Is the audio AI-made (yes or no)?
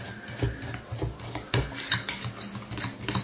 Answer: no